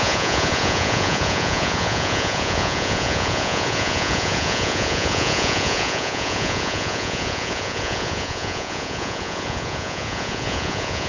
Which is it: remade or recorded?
remade